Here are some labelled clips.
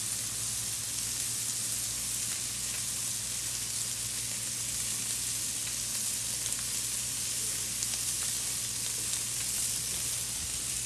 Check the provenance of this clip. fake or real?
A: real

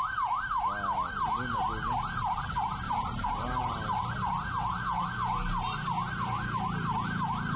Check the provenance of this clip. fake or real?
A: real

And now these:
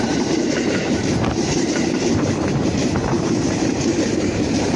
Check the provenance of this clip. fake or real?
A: fake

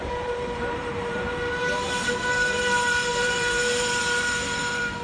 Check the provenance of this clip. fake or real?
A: fake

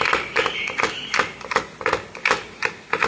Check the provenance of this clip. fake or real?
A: real